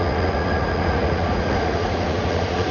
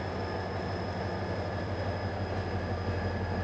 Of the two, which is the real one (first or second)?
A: second